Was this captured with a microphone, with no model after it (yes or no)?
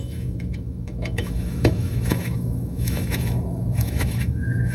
no